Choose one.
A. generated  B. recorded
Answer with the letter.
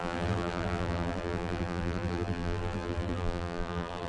A